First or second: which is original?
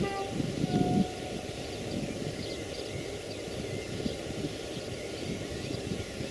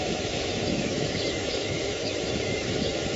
first